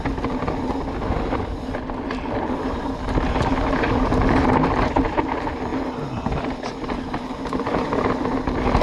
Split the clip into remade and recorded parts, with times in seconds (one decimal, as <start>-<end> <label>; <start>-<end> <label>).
0.0-8.8 recorded